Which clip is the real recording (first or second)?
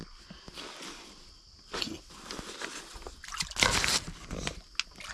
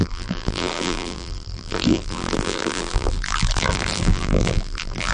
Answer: first